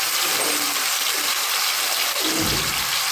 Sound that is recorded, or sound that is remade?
recorded